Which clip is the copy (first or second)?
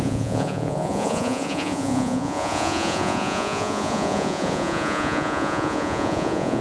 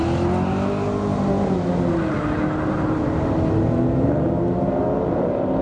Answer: first